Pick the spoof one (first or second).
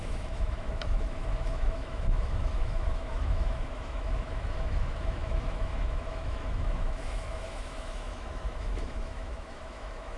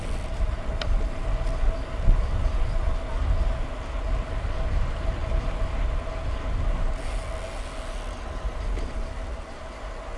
first